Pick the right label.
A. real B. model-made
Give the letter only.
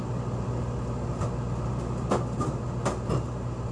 A